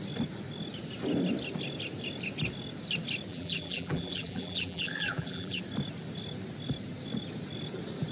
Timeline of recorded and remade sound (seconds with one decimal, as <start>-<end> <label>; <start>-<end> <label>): 0.0-3.3 recorded; 3.3-5.6 remade; 5.6-8.1 recorded